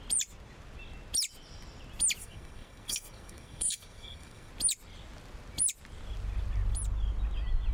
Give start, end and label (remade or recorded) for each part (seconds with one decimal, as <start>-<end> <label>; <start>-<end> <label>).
0.0-2.2 recorded; 2.2-4.5 remade; 4.5-7.7 recorded